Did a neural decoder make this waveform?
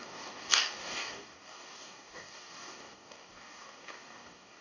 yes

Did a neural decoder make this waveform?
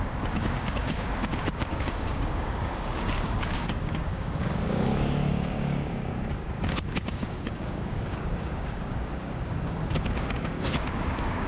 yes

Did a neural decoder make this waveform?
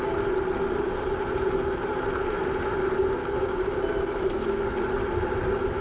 no